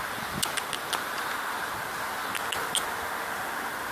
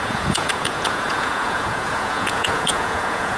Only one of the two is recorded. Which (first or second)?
first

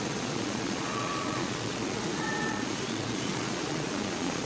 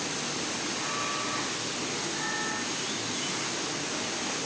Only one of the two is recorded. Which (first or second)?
second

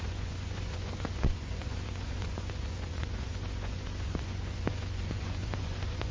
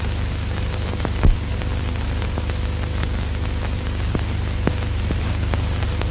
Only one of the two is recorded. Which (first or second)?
second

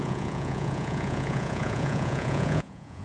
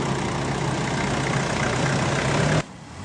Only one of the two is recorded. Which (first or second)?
second